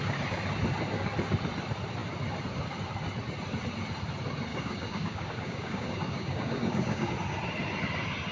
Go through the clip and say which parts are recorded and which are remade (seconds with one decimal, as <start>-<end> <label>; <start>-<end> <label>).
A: 0.0-4.5 recorded; 4.5-7.1 remade; 7.1-8.3 recorded

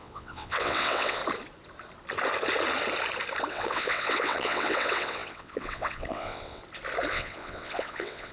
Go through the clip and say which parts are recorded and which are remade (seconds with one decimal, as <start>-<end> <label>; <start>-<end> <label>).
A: 0.0-1.2 remade; 1.2-3.5 recorded; 3.5-6.6 remade; 6.6-7.1 recorded; 7.1-8.3 remade

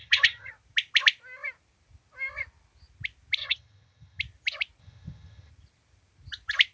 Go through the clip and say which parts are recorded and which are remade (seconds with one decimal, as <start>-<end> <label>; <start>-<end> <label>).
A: 0.0-0.5 remade; 0.5-3.4 recorded; 3.4-4.2 remade; 4.2-4.8 recorded; 4.8-5.5 remade; 5.5-6.7 recorded

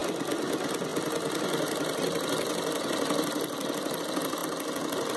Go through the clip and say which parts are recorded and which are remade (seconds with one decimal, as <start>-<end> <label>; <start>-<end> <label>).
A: 0.0-0.9 recorded; 0.9-4.0 remade; 4.0-5.2 recorded

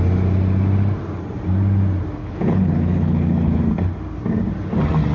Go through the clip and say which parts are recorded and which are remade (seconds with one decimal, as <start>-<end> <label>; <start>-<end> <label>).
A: 0.0-2.2 recorded; 2.2-3.6 remade; 3.6-5.1 recorded

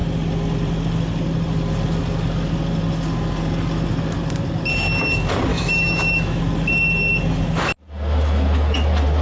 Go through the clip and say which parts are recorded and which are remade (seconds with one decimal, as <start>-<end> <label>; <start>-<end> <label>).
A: 0.0-5.5 recorded; 5.5-6.4 remade; 6.4-9.2 recorded

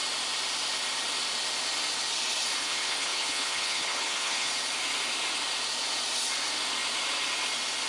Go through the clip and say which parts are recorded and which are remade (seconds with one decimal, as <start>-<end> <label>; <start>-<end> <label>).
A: 0.0-2.6 recorded; 2.6-4.5 remade; 4.5-7.9 recorded